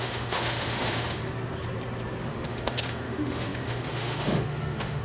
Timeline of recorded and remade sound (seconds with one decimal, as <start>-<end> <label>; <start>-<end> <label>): 0.0-1.2 remade; 1.2-2.3 recorded; 2.3-5.0 remade